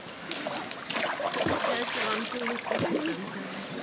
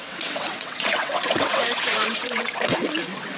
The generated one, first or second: second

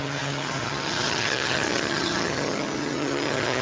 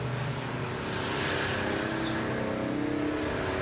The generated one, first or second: first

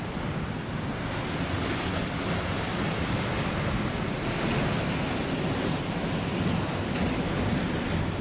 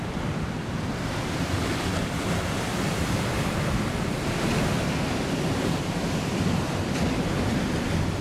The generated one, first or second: second